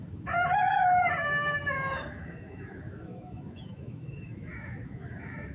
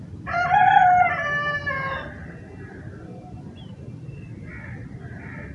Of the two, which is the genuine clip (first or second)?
second